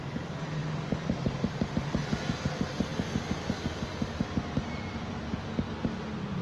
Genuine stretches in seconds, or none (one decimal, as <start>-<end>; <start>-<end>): 0.0-6.4